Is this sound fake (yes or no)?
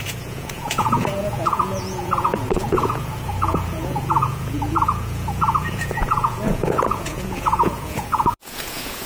yes